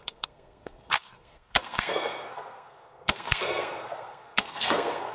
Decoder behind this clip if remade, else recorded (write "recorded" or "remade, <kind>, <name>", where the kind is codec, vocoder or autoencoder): remade, codec, SNAC